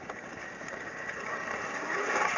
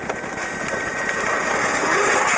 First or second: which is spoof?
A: first